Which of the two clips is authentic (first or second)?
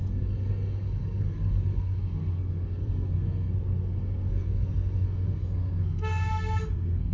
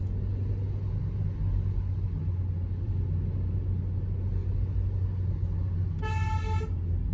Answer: second